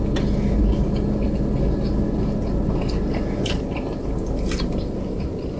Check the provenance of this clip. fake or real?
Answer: real